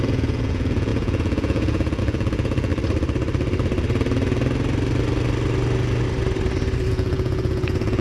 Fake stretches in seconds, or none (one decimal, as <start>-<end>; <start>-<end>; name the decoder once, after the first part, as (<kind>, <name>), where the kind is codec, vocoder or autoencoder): 0.0-2.7 (vocoder, Vocos); 6.9-8.0